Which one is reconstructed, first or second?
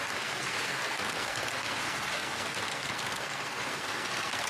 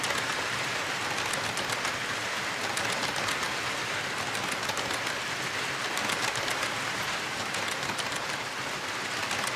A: first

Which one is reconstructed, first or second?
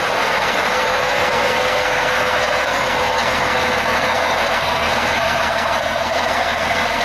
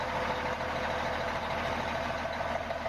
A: first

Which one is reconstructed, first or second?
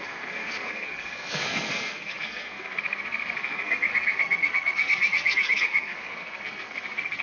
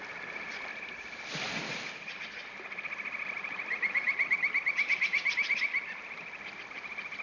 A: first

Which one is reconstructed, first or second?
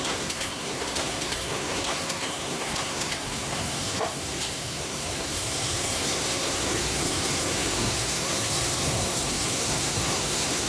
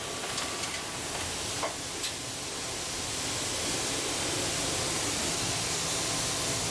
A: first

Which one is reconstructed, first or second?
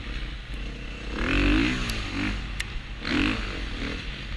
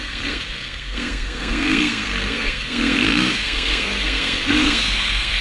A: second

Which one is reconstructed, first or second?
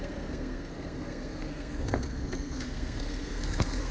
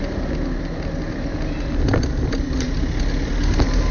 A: first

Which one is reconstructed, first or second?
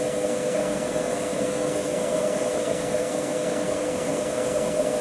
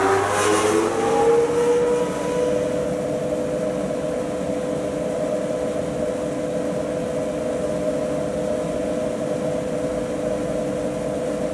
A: first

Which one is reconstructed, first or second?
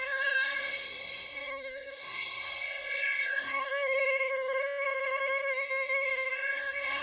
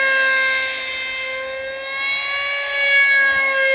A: first